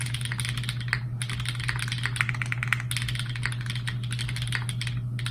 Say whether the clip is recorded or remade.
recorded